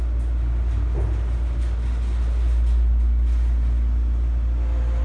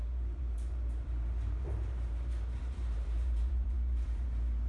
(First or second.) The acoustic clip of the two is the first